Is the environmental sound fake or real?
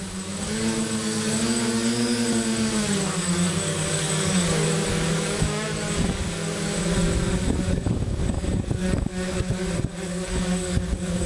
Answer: fake